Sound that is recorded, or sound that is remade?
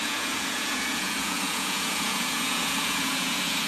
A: remade